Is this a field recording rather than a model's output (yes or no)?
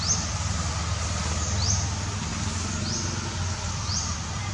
yes